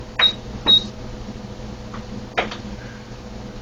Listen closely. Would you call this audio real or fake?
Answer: real